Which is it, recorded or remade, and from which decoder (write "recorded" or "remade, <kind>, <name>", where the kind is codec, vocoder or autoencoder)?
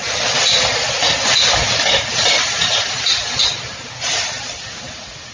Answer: recorded